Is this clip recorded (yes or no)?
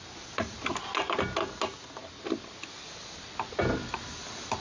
yes